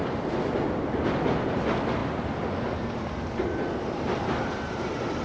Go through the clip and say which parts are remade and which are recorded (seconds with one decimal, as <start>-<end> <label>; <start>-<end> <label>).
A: 0.0-5.2 recorded